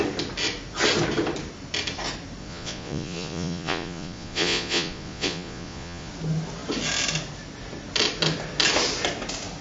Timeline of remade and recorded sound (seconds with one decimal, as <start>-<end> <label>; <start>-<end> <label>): 0.0-2.4 recorded; 2.4-6.1 remade; 6.1-9.6 recorded